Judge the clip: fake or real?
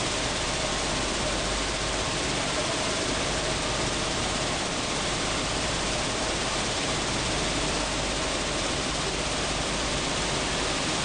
fake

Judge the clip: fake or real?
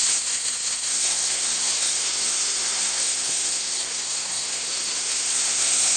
fake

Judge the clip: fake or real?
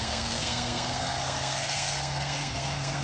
fake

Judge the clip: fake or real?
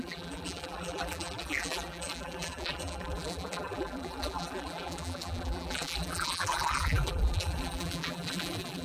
fake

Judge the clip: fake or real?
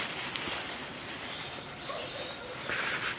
fake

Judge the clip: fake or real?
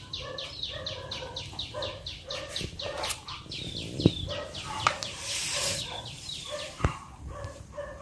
fake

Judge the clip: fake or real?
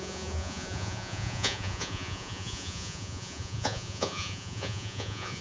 fake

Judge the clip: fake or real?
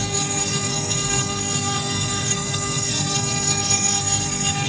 fake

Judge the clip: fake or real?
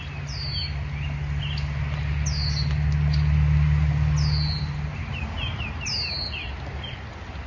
real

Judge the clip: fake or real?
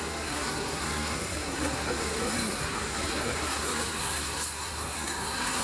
fake